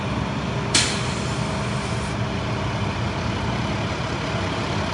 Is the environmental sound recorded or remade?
recorded